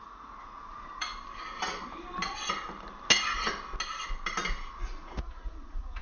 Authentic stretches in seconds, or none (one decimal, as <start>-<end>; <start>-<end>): 1.1-4.7